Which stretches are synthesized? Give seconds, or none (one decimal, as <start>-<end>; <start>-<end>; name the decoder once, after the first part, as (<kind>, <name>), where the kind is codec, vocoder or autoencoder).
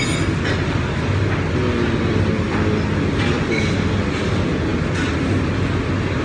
none